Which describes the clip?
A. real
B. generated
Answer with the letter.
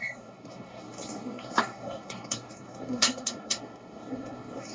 B